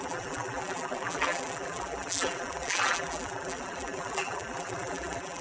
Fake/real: fake